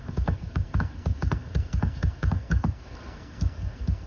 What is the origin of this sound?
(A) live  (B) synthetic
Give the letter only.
B